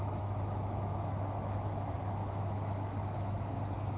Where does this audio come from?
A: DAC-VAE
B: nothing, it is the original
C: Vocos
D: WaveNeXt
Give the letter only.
A